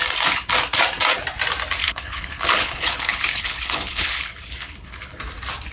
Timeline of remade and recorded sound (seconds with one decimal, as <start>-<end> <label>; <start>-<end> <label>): 0.0-1.8 recorded; 1.8-5.2 remade; 5.2-5.7 recorded